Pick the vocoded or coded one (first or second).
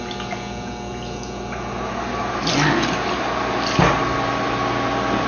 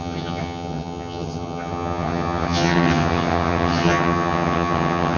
second